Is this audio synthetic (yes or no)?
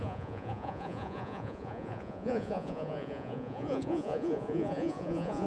yes